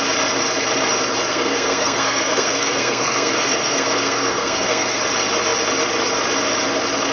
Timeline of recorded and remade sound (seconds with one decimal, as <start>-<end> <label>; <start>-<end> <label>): 0.0-1.3 recorded; 1.3-5.0 remade; 5.0-7.1 recorded